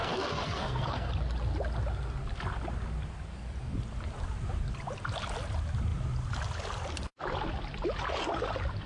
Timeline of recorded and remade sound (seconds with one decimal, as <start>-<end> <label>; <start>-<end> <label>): 0.0-1.1 remade; 1.1-8.9 recorded

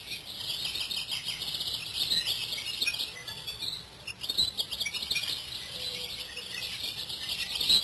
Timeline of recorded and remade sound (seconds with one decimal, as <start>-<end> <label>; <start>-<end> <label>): 0.0-3.6 recorded; 3.6-4.8 remade; 4.8-7.8 recorded